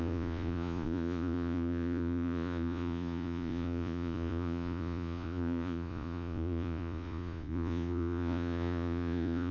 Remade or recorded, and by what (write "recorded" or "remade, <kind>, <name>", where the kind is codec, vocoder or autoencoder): remade, vocoder, Vocos